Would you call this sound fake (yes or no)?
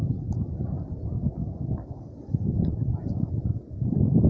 no